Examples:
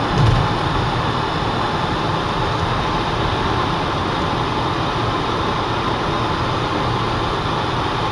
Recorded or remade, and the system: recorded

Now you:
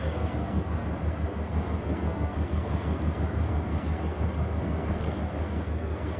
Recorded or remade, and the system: remade, codec, SNAC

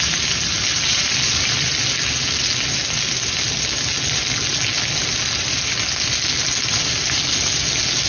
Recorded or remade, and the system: recorded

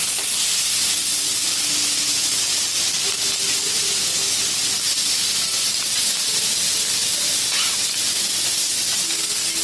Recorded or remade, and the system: recorded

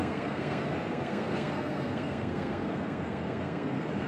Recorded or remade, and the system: remade, codec, SNAC